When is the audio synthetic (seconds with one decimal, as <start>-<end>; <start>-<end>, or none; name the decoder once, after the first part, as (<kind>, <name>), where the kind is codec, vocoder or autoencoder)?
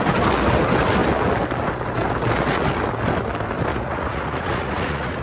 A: 3.7-5.2 (vocoder, Vocos)